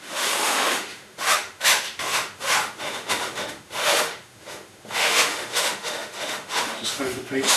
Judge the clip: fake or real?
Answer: fake